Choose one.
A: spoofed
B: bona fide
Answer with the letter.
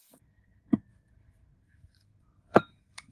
A